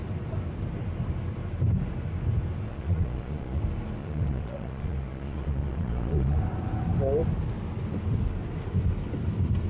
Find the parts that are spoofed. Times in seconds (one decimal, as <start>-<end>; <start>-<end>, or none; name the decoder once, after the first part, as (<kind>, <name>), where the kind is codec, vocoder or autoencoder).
2.7-3.6 (vocoder, Vocos); 4.0-6.4